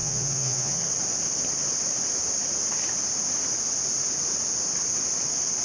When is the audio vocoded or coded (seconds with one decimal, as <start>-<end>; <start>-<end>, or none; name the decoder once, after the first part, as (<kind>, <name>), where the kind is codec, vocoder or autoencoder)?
0.0-0.8 (vocoder, Vocos)